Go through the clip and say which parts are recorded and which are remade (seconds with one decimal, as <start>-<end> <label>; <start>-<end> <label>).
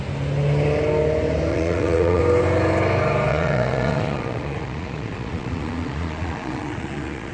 0.0-1.5 recorded; 1.5-2.2 remade; 2.2-3.3 recorded; 3.3-7.3 remade